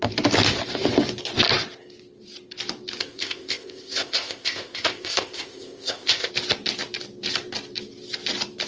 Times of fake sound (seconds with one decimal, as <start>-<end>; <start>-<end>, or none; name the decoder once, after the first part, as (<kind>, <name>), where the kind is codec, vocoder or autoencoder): 3.0-6.3 (codec, ZipCodec)